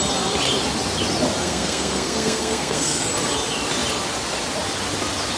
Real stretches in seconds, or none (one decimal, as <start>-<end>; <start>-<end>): 0.0-1.4; 3.1-5.4